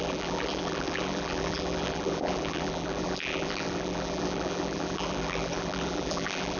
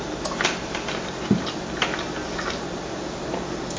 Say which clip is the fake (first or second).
first